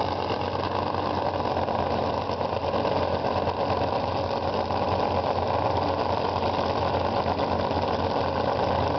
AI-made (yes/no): no